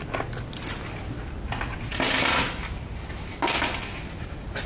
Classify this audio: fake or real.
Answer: real